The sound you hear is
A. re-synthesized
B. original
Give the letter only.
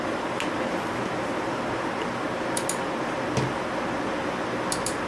B